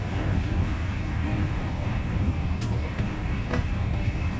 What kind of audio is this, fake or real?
fake